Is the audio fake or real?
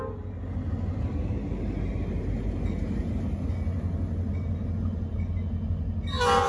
real